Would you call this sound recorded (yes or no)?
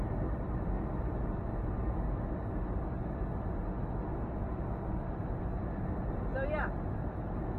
yes